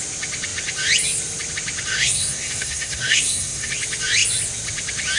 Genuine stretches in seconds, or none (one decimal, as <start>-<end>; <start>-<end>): 0.0-1.9; 3.7-5.2